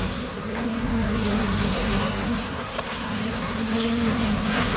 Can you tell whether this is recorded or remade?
remade